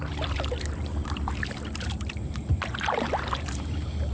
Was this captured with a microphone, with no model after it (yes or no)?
no